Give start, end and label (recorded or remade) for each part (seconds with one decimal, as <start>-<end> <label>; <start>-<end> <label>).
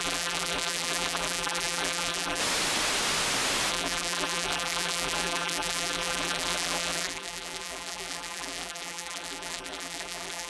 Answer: 0.0-2.4 remade; 2.4-3.7 recorded; 3.7-10.5 remade